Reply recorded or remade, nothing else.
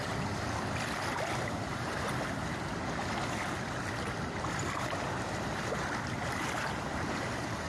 recorded